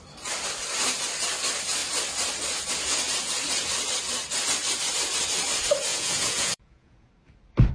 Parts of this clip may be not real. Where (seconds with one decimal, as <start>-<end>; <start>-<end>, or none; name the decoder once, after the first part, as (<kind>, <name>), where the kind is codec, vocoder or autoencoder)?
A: 5.9-7.1 (vocoder, Vocos)

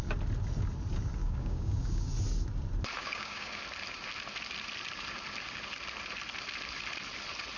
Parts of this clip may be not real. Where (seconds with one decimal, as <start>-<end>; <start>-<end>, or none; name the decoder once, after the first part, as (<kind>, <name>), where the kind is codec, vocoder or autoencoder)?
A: 1.2-2.1 (codec, DAC); 3.0-3.6

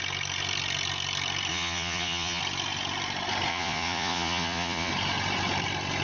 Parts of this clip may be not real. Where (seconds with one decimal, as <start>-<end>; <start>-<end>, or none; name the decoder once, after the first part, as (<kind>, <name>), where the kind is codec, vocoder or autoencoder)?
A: 1.5-2.4 (vocoder, Vocos); 3.5-4.9

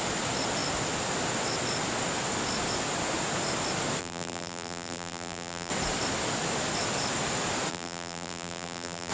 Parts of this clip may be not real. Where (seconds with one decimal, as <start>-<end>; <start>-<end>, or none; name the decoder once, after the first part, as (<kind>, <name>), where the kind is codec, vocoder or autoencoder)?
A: 4.0-5.7 (vocoder, BigVGAN v2); 7.7-9.1

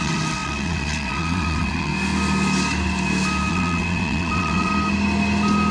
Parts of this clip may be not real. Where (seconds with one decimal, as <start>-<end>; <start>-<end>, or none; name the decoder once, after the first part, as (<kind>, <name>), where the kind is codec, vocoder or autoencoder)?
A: 0.0-1.9 (vocoder, WaveNeXt); 3.5-4.7

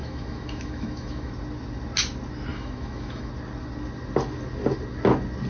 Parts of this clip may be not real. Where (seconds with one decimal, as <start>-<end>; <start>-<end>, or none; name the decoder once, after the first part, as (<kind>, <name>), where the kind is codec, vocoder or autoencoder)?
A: 0.0-1.3 (autoencoder, DAC-VAE); 2.5-3.3

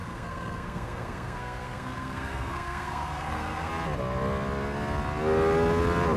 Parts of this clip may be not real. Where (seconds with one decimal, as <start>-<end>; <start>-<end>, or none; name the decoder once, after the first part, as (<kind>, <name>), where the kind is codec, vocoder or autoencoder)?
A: 0.0-3.7 (codec, SNAC)